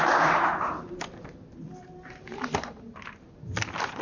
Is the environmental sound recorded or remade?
recorded